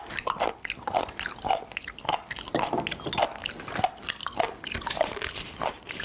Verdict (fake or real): real